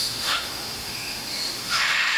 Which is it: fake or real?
fake